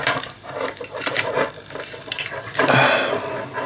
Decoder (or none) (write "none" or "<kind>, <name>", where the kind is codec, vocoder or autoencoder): none